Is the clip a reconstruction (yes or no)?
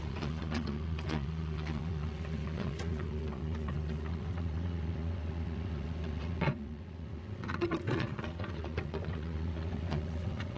yes